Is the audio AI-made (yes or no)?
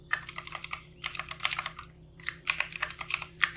yes